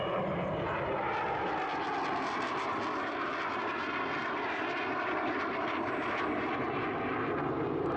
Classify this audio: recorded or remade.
recorded